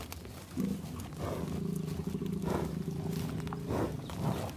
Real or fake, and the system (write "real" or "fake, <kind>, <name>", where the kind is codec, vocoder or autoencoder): real